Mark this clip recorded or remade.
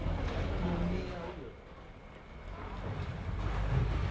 recorded